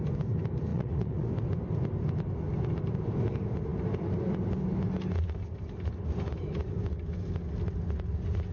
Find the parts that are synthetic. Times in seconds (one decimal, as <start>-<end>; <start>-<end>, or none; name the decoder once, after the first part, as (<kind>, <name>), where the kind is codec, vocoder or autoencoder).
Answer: 0.7-1.3 (vocoder, Vocos)